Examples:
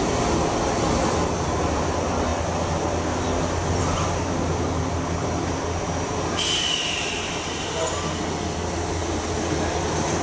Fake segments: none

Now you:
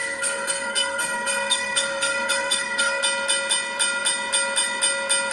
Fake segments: 0.0-3.0 (codec, SNAC)